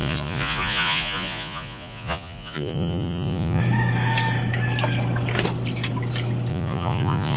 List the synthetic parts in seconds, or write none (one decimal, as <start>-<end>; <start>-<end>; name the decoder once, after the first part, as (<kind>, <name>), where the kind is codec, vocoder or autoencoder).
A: 0.0-3.6 (vocoder, Vocos); 6.5-7.4